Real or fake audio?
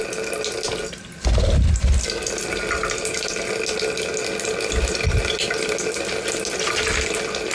real